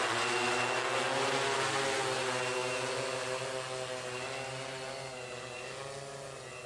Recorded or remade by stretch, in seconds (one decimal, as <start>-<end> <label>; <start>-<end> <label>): 0.0-6.7 recorded